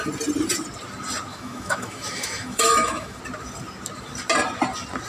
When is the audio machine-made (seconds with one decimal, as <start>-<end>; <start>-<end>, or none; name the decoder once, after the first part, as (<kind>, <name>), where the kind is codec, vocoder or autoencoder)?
1.3-3.2 (autoencoder, DAC-VAE)